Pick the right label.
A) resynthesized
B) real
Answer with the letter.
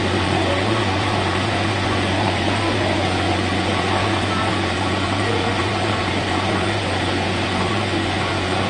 A